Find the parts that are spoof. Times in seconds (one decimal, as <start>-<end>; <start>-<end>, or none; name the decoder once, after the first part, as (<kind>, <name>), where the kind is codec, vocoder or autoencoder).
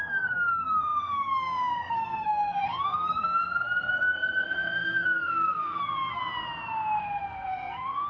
0.0-6.2 (codec, SNAC); 7.0-8.1